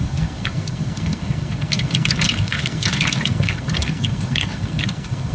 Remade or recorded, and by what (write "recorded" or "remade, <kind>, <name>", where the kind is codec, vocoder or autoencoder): remade, codec, SNAC